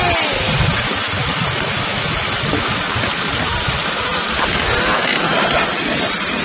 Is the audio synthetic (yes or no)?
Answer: no